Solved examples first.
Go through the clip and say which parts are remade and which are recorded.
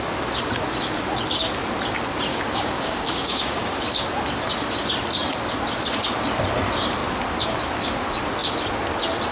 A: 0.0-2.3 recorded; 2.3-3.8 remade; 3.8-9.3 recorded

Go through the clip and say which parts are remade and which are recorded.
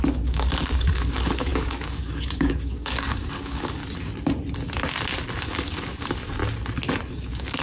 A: 0.0-3.8 remade; 3.8-5.4 recorded; 5.4-6.4 remade; 6.4-7.1 recorded; 7.1-7.6 remade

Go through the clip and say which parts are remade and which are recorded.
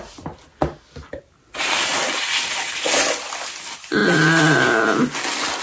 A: 0.0-5.6 recorded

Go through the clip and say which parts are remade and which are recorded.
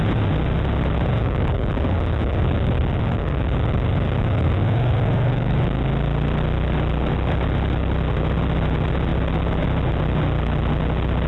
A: 0.0-1.2 recorded; 1.2-5.8 remade; 5.8-11.3 recorded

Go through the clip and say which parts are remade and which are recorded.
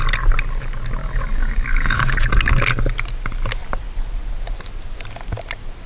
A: 0.0-1.0 recorded; 1.0-2.2 remade; 2.2-5.9 recorded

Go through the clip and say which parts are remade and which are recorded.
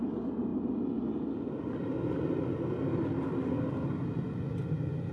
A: 0.0-5.1 recorded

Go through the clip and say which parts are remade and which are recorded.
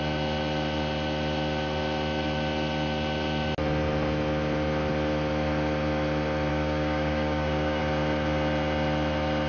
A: 0.0-6.5 recorded; 6.5-7.8 remade; 7.8-9.5 recorded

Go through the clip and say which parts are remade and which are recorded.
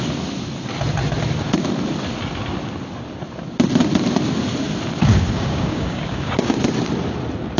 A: 0.0-5.1 recorded; 5.1-6.6 remade; 6.6-7.6 recorded